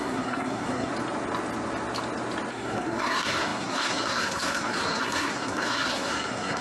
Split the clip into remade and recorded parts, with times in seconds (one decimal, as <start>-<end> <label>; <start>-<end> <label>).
0.0-0.9 remade; 0.9-2.5 recorded; 2.5-6.6 remade